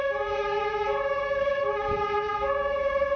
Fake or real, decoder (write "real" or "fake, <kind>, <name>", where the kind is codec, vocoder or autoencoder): fake, autoencoder, DAC-VAE